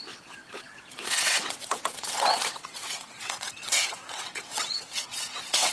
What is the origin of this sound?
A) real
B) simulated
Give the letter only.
B